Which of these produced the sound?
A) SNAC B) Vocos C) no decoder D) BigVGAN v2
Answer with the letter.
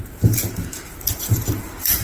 D